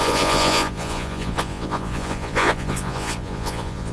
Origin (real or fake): fake